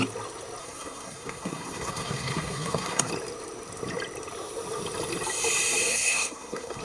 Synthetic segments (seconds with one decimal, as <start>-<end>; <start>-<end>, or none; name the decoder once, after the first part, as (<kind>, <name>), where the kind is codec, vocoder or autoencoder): 0.6-3.1 (codec, SNAC); 5.9-6.8